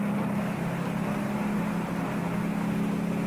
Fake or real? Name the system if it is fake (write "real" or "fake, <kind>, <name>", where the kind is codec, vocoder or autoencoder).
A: real